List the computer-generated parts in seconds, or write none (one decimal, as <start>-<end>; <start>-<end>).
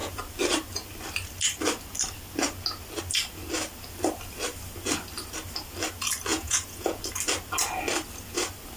6.3-7.0